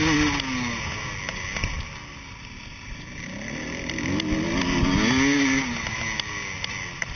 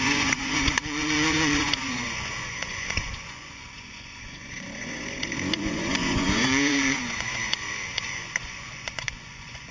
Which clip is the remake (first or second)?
second